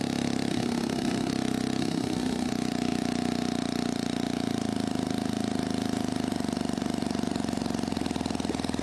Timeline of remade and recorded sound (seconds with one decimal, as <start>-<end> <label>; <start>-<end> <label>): 0.0-0.5 recorded; 0.5-1.3 remade; 1.3-1.8 recorded; 1.8-2.5 remade; 2.5-8.8 recorded

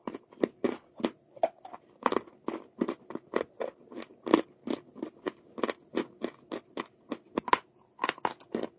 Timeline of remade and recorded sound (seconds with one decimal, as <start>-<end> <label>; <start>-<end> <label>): 0.0-8.8 recorded

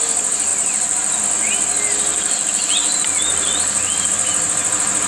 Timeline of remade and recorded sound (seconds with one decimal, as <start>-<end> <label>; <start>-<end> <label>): 0.0-0.5 recorded; 0.5-1.2 remade; 1.2-2.1 recorded; 2.1-4.1 remade; 4.1-5.1 recorded

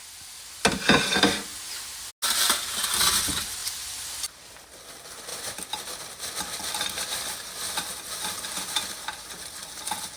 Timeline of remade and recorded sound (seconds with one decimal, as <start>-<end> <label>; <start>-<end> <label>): 0.0-3.6 recorded; 3.6-4.5 remade; 4.5-5.3 recorded; 5.3-9.7 remade; 9.7-10.2 recorded

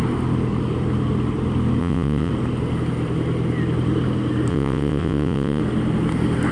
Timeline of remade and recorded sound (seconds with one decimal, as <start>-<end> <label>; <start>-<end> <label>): 0.0-1.8 recorded; 1.8-2.3 remade; 2.3-4.5 recorded; 4.5-5.6 remade; 5.6-6.5 recorded

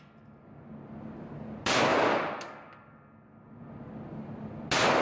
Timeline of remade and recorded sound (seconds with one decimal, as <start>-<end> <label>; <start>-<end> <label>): 0.0-5.0 recorded

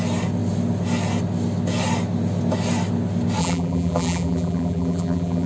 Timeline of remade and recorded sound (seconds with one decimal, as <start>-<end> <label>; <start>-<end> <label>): 0.0-3.4 recorded; 3.4-5.5 remade